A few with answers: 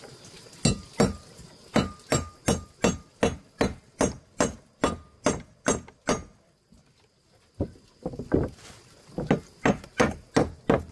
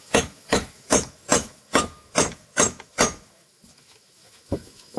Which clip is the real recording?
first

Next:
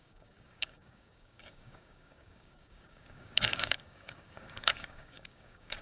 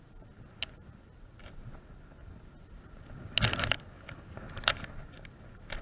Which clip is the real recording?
second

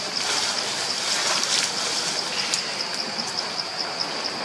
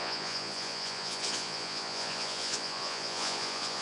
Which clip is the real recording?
first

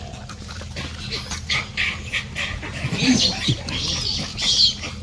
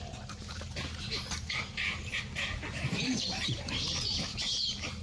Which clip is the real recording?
first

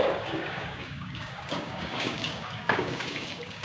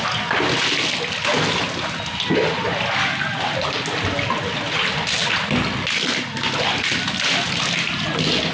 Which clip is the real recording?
second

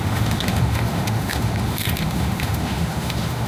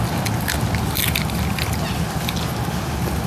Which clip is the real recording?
second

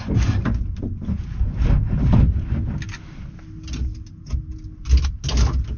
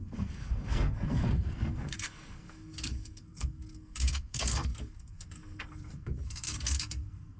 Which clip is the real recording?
first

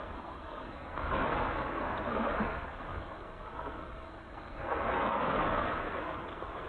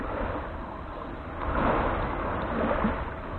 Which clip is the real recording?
second